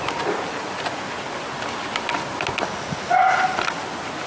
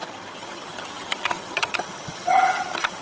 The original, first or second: first